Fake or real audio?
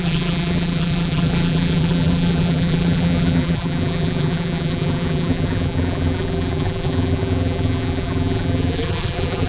fake